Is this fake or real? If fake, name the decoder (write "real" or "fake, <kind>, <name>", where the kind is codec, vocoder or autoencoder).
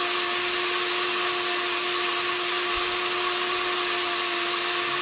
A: real